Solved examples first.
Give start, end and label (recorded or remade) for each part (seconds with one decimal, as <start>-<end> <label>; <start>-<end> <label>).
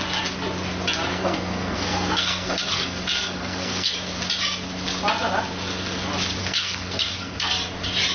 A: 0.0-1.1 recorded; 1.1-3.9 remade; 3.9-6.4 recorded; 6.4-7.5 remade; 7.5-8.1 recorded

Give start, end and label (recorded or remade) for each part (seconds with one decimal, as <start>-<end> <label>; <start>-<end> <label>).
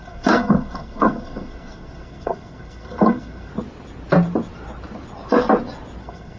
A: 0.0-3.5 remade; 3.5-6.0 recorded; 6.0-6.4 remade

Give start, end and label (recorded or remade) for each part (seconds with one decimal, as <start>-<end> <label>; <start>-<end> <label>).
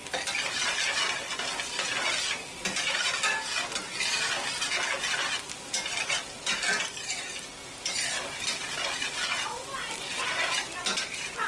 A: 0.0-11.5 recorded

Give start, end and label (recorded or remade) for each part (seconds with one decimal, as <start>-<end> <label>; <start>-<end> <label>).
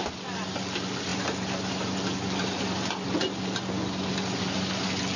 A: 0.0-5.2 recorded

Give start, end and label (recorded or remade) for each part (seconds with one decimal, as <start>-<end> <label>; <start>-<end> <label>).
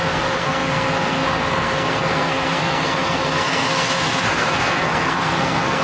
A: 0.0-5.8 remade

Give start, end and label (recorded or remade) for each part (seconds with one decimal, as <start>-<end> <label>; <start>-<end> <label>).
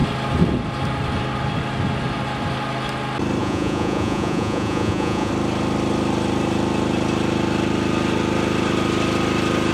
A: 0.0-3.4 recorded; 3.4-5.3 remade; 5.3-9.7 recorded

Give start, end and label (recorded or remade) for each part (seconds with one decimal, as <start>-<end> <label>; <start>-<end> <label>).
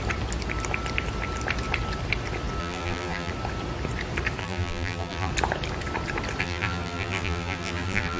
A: 0.0-2.6 recorded; 2.6-3.3 remade; 3.3-4.4 recorded; 4.4-5.3 remade; 5.3-6.4 recorded; 6.4-8.2 remade